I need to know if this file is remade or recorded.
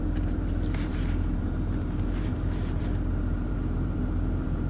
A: remade